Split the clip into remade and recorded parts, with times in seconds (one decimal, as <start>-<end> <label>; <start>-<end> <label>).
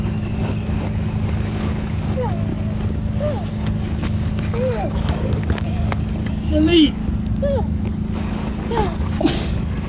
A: 0.0-2.5 remade; 2.5-3.5 recorded; 3.5-7.0 remade; 7.0-7.6 recorded; 7.6-9.9 remade